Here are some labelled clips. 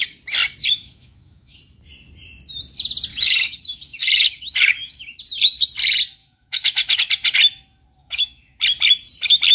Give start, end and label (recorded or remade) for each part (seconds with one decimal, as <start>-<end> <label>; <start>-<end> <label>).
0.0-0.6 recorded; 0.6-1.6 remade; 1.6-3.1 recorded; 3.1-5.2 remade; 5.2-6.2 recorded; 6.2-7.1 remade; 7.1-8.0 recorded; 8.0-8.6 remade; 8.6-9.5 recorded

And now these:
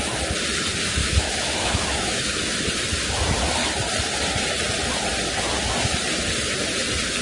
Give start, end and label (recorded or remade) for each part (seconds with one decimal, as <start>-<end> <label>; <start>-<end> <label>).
0.0-1.0 recorded; 1.0-2.4 remade; 2.4-7.2 recorded

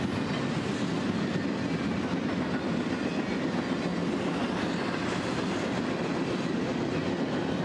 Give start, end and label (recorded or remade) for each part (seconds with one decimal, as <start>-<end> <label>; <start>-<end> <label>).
0.0-7.6 recorded

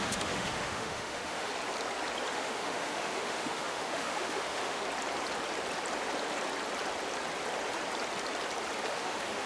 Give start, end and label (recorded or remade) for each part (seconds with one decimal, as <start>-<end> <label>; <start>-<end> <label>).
0.0-1.5 remade; 1.5-2.3 recorded; 2.3-4.8 remade; 4.8-8.9 recorded; 8.9-9.5 remade